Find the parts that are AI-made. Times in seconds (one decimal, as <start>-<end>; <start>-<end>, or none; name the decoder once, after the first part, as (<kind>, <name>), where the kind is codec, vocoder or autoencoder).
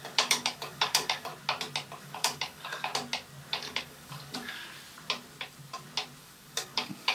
0.0-1.3 (codec, DAC); 2.0-2.9; 3.5-4.6; 6.2-7.1